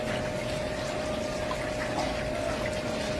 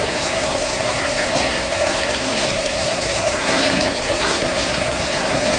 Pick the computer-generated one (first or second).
second